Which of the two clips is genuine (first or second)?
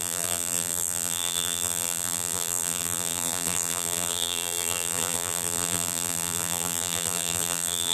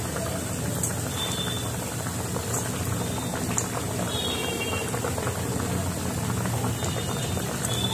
second